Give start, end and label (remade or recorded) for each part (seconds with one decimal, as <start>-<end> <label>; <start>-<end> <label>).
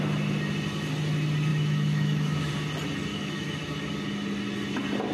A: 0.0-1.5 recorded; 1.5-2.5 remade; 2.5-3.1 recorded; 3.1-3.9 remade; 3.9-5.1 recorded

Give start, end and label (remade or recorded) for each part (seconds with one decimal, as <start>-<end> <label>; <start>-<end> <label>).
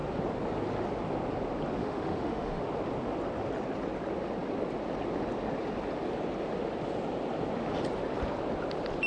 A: 0.0-1.8 recorded; 1.8-2.6 remade; 2.6-9.1 recorded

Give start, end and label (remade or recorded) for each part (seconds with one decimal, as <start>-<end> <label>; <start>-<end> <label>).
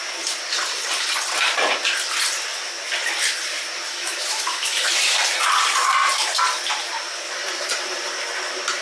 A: 0.0-3.9 recorded; 3.9-4.9 remade; 4.9-8.8 recorded